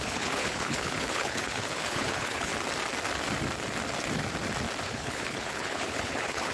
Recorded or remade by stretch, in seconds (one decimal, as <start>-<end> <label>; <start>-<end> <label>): 0.0-2.5 remade; 2.5-4.8 recorded; 4.8-6.5 remade